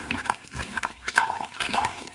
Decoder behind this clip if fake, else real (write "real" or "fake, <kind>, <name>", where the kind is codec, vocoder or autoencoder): fake, codec, SNAC